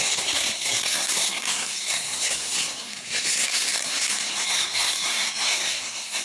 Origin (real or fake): fake